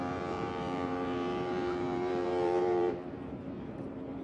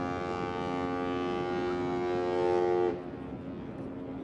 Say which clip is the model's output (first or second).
first